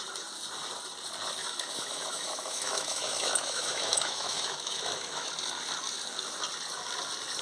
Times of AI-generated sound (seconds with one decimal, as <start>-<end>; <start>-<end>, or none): 1.4-5.3